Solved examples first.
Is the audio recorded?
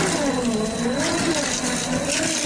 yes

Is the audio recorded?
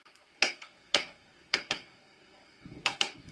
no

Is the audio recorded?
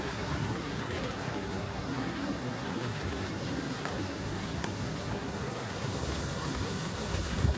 no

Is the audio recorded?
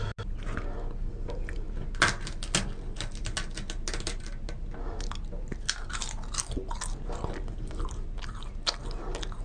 yes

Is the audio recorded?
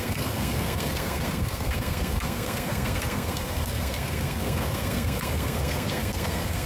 no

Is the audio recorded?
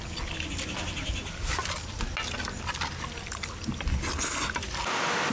yes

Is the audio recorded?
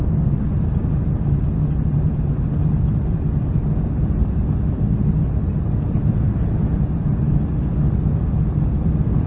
yes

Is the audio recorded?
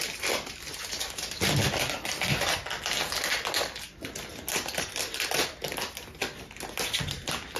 yes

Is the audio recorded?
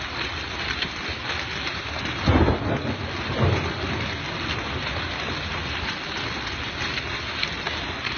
yes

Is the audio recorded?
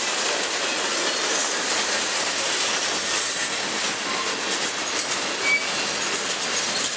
yes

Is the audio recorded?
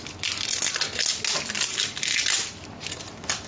yes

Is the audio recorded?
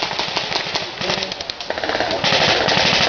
yes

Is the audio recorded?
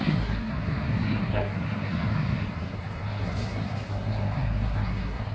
no